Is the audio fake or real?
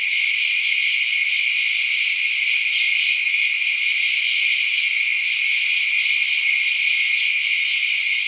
real